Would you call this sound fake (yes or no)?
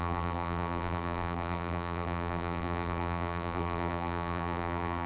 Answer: yes